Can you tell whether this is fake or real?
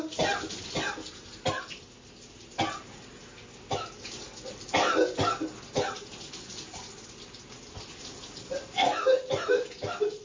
real